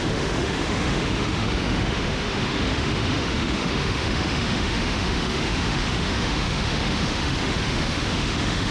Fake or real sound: fake